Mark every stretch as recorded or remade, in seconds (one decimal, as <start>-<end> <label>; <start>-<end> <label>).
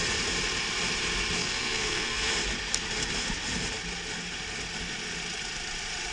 0.0-1.4 recorded; 1.4-2.3 remade; 2.3-6.1 recorded